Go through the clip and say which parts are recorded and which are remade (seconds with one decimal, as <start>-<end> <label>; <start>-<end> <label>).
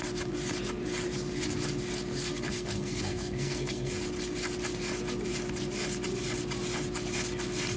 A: 0.0-2.3 recorded; 2.3-3.9 remade; 3.9-7.8 recorded